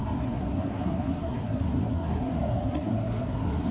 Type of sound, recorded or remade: remade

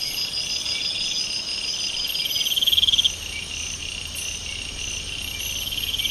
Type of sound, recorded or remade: recorded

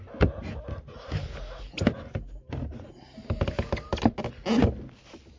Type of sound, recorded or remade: recorded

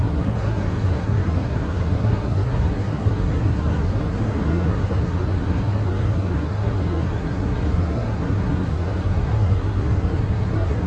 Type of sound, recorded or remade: remade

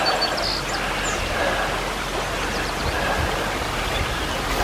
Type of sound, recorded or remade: recorded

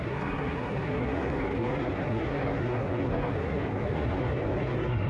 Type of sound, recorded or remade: remade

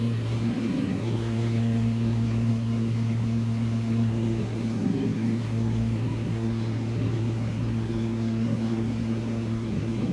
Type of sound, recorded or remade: remade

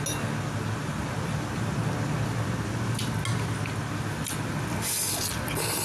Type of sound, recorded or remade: recorded